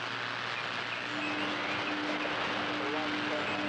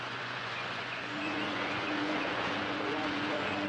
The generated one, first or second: second